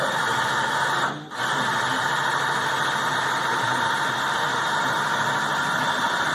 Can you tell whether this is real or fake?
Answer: real